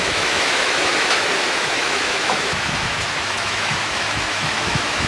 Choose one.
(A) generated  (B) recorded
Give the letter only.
A